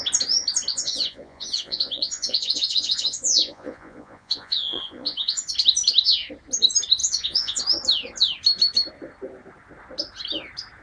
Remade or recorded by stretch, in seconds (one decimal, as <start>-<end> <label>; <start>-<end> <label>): 0.0-0.7 recorded; 0.7-5.5 remade; 5.5-7.0 recorded; 7.0-7.6 remade; 7.6-10.8 recorded